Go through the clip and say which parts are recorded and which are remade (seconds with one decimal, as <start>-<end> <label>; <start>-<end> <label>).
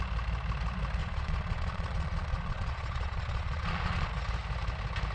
0.0-1.0 recorded; 1.0-4.1 remade; 4.1-5.1 recorded